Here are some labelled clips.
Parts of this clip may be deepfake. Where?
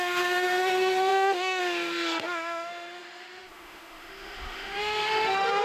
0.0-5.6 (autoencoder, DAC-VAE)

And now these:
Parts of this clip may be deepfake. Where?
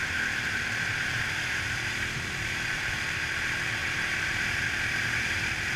0.0-3.8 (vocoder, BigVGAN v2); 5.2-5.8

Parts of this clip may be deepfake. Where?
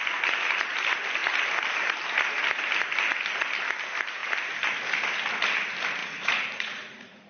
6.0-7.3 (vocoder, Vocos)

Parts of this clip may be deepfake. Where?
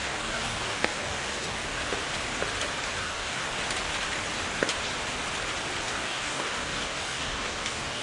0.0-1.8 (codec, DAC); 3.0-3.4; 5.8-8.0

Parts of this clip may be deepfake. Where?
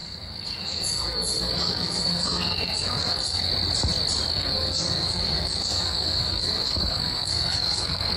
0.0-3.5 (codec, SNAC); 4.3-8.2